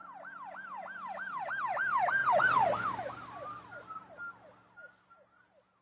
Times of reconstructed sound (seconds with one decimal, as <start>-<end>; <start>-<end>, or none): 2.2-4.3